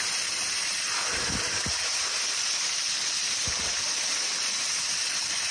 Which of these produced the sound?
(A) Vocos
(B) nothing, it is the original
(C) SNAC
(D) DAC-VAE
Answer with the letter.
B